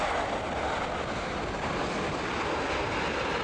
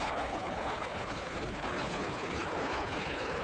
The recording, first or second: first